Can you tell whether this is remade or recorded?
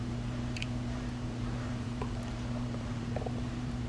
remade